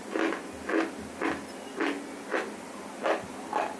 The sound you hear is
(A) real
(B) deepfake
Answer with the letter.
A